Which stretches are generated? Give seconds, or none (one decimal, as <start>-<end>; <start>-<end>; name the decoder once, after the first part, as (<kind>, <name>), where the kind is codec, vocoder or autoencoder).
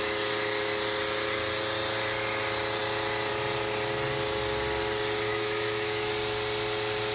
5.3-6.1 (autoencoder, DAC-VAE)